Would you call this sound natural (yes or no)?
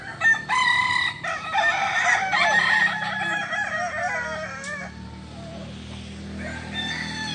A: yes